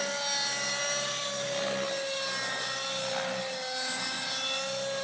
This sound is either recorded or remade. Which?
recorded